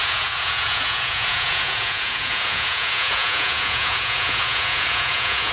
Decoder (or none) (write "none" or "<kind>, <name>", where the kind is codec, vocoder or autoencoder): vocoder, Vocos